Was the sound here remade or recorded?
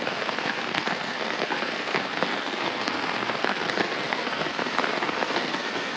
remade